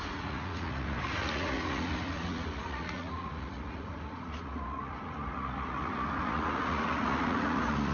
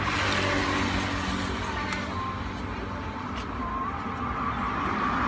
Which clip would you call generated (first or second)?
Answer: first